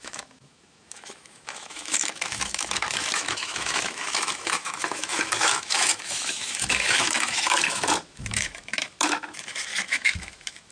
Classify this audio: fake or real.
fake